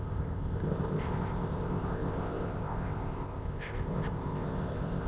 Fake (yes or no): yes